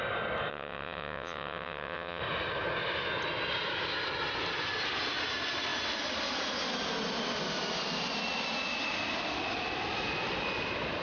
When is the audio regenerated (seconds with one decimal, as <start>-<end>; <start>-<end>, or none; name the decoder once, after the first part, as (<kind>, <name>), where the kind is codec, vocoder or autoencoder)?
0.5-2.2 (vocoder, WaveNeXt)